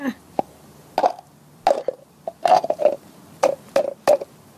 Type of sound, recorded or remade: recorded